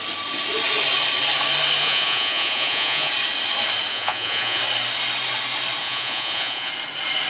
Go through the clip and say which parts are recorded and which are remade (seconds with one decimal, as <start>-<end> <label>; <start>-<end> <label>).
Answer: 0.0-1.8 recorded; 1.8-3.1 remade; 3.1-3.9 recorded; 3.9-4.6 remade; 4.6-5.8 recorded; 5.8-6.7 remade; 6.7-7.3 recorded